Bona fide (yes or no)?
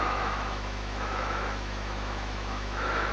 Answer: no